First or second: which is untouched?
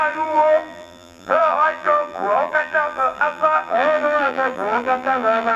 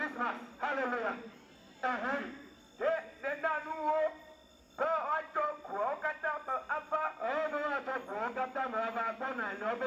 second